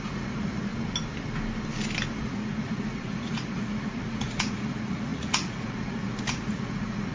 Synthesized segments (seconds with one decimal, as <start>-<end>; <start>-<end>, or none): 0.0-0.7; 2.2-7.1